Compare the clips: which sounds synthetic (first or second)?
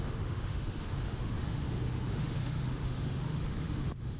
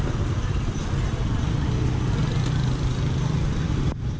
first